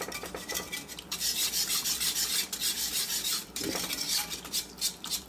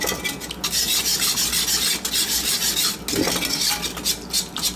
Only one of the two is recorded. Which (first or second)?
second